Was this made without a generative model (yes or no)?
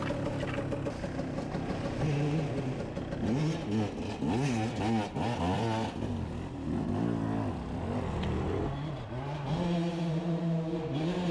yes